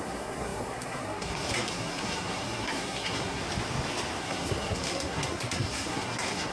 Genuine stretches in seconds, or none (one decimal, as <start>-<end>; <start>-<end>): 3.4-4.2